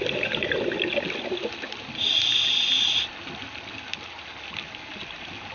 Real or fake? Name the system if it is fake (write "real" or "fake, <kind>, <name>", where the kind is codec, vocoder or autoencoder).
real